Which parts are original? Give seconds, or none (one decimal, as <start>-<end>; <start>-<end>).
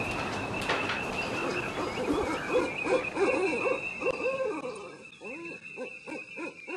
0.0-6.8